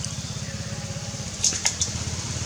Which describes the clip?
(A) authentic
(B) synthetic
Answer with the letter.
A